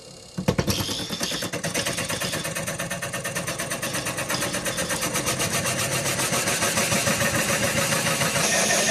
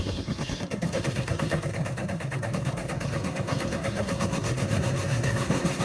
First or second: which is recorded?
first